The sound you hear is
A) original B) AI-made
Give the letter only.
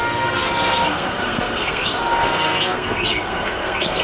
B